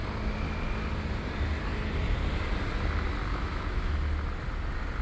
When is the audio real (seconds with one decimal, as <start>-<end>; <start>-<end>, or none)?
0.0-3.3; 3.9-5.0